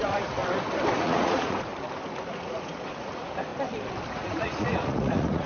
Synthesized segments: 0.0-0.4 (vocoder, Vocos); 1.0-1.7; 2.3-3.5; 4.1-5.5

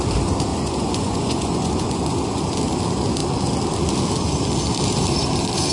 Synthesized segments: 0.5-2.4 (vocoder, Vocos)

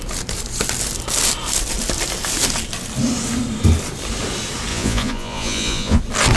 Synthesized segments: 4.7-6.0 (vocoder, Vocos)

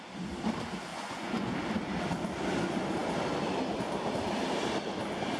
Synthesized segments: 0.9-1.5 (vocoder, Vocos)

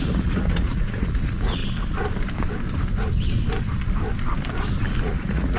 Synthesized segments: 0.0-1.6 (vocoder, Vocos); 5.0-5.6

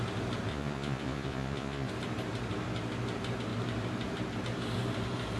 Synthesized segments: 0.5-1.9 (vocoder, Vocos)

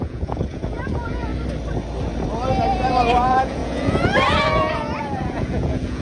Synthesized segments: 0.0-1.3 (vocoder, Vocos); 2.9-6.0